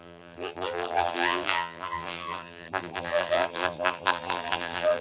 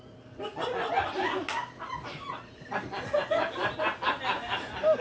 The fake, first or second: first